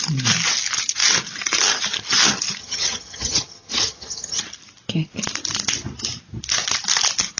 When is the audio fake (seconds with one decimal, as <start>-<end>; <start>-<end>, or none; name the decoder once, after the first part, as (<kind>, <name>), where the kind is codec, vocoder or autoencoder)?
2.6-4.4 (vocoder, HiFi-GAN)